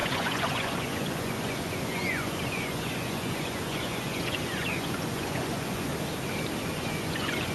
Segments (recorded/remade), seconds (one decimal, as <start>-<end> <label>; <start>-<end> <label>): 0.0-5.9 remade; 5.9-6.6 recorded; 6.6-7.5 remade